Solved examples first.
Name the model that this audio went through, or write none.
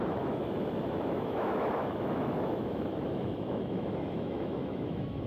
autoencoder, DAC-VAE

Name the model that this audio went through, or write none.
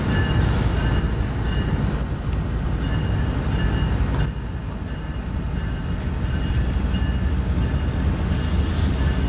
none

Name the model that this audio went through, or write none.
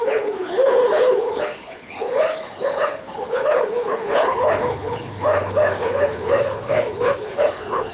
codec, HILCodec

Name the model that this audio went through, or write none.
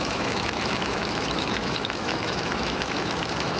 autoencoder, DAC-VAE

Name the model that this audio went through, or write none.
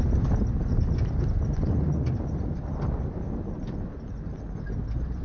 none